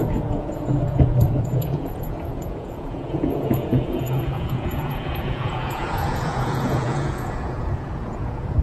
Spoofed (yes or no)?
yes